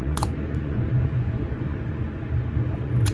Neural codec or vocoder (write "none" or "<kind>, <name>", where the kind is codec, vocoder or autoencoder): vocoder, Vocos